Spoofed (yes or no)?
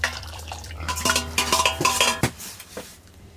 yes